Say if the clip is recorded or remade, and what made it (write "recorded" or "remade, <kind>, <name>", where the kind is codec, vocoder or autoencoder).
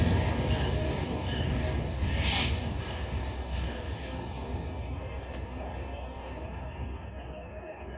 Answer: remade, codec, DAC